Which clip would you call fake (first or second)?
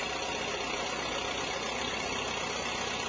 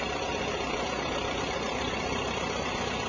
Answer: second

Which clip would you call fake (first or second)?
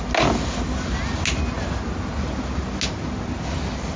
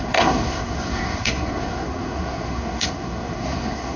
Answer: second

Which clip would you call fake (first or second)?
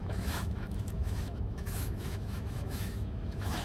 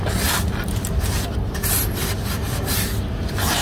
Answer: first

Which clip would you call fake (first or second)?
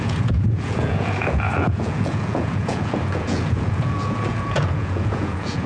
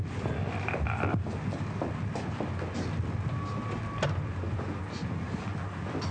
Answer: first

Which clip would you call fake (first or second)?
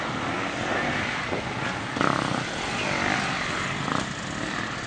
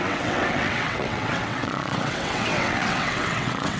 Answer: second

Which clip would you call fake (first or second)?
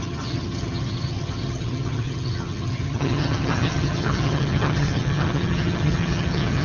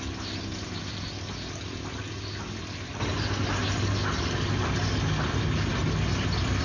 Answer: first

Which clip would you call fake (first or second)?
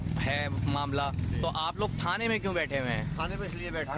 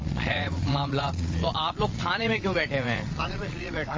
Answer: second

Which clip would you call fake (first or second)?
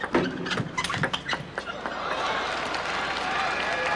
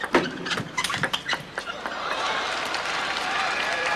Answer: second